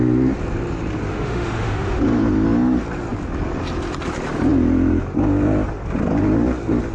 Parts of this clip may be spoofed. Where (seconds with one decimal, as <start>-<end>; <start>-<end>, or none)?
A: 1.1-2.0